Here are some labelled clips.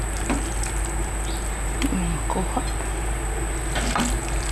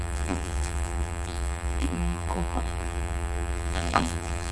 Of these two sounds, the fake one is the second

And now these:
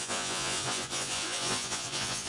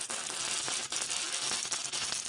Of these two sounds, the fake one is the first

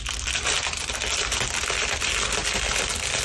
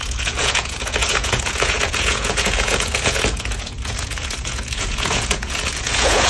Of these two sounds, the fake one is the second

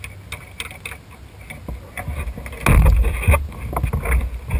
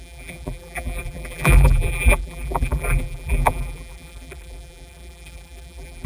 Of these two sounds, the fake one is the second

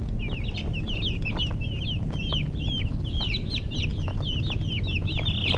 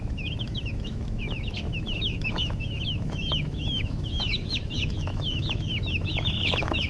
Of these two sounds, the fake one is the second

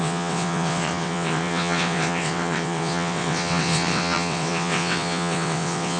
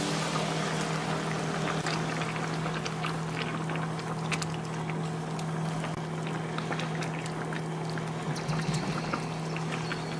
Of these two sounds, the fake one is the first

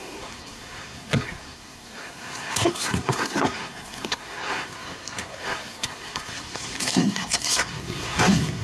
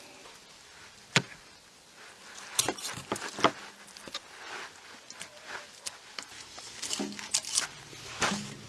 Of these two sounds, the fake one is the first